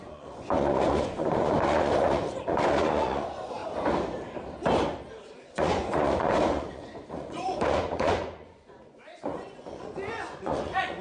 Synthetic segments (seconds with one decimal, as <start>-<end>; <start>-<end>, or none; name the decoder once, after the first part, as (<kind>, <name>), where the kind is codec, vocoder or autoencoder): 0.0-3.6 (vocoder, Vocos); 5.5-11.0